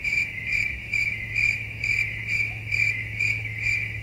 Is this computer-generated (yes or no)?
yes